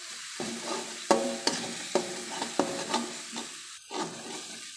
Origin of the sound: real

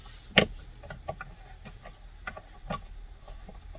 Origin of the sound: real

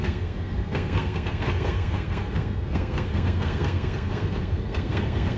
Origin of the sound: fake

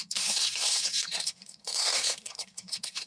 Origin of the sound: fake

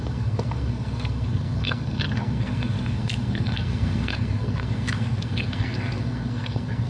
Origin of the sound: fake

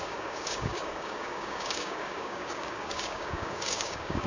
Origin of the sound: fake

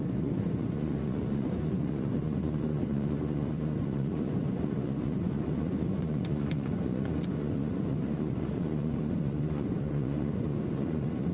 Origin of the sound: fake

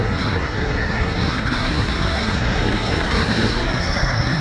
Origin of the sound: fake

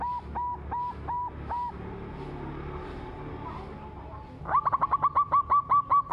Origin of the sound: real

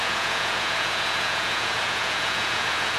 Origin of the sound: fake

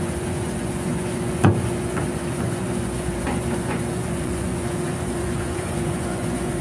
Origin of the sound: fake